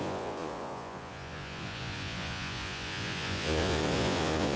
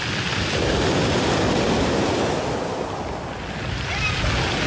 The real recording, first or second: second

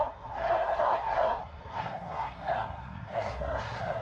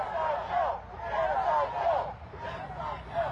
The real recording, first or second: second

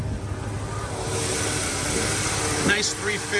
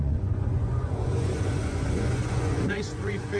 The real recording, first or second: first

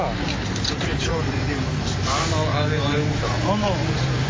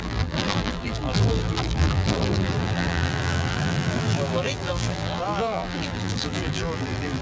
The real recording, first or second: first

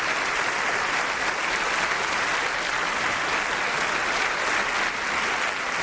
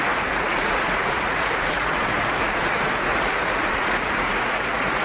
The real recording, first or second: first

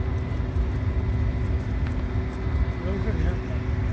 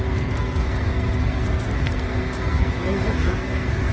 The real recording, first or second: first